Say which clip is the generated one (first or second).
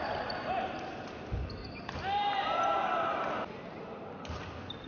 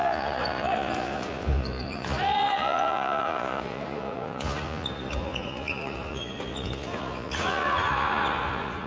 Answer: second